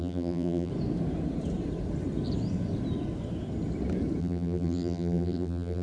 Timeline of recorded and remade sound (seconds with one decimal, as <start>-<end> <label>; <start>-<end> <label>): 0.0-0.7 remade; 0.7-4.2 recorded; 4.2-5.8 remade